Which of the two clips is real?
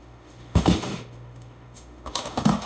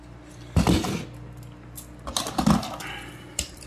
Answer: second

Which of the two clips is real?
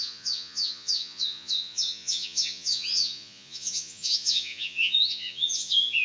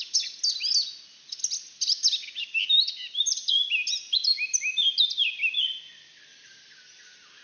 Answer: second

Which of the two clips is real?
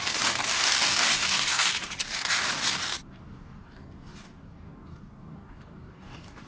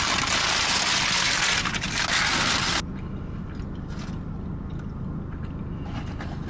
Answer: second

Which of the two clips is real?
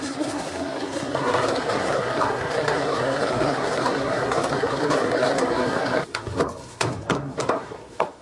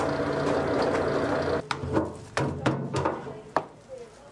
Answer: second